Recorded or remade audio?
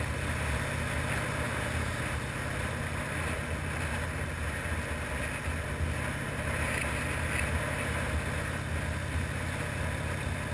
recorded